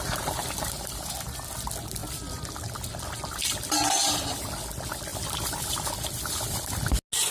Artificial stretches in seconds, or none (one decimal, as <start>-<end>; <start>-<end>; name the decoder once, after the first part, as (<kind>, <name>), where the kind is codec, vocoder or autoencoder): 0.4-1.5 (vocoder, BigVGAN v2); 2.0-4.6; 5.1-5.9